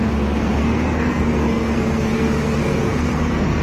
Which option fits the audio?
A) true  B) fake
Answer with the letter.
B